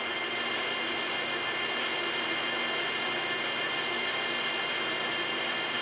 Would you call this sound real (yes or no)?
yes